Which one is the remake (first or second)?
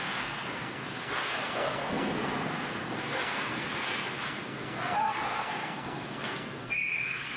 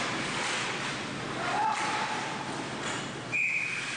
first